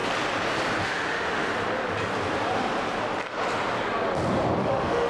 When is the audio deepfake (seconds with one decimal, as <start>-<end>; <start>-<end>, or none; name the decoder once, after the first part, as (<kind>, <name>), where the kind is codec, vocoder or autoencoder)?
0.8-1.5 (autoencoder, DAC-VAE); 4.6-5.1